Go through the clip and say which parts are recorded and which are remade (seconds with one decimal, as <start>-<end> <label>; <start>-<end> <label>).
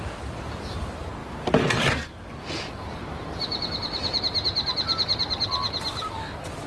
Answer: 0.0-3.0 remade; 3.0-5.3 recorded; 5.3-6.7 remade